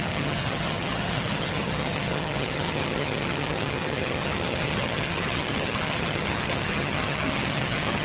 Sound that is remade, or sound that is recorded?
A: remade